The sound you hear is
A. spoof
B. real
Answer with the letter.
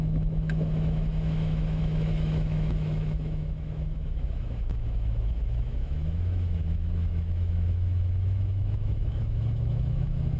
A